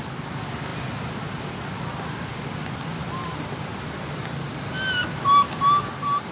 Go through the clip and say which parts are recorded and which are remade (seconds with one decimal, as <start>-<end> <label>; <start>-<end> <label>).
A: 0.0-6.3 recorded